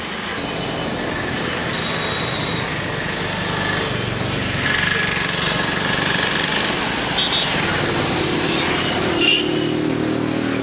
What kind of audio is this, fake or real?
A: real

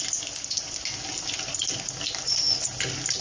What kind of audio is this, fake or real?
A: real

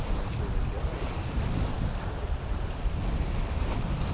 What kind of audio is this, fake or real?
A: real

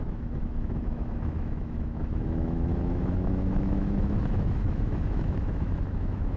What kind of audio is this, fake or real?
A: fake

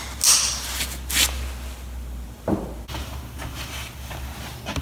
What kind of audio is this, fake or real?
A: real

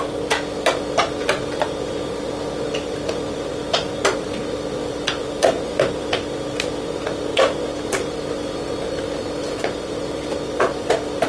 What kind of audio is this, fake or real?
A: real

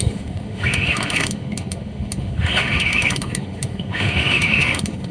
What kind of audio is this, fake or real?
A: fake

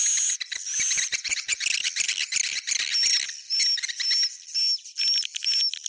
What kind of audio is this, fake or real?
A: real